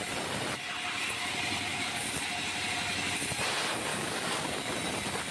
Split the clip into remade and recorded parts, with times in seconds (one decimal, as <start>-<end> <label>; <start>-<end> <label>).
0.0-1.7 recorded; 1.7-2.2 remade; 2.2-3.9 recorded; 3.9-4.7 remade; 4.7-5.3 recorded

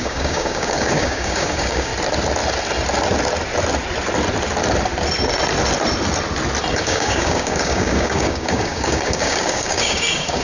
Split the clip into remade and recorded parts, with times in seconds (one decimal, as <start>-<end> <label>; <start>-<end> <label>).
0.0-1.9 remade; 1.9-6.7 recorded; 6.7-10.4 remade

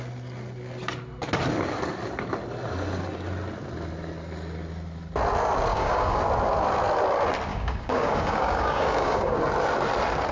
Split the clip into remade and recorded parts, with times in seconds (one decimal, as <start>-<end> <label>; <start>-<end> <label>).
0.0-5.7 recorded; 5.7-6.2 remade; 6.2-7.5 recorded; 7.5-9.4 remade; 9.4-10.3 recorded

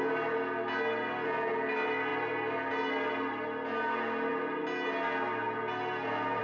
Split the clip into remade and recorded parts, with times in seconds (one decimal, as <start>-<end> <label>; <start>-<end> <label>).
0.0-6.4 recorded